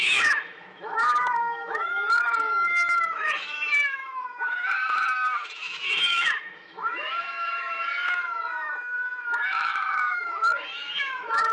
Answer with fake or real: fake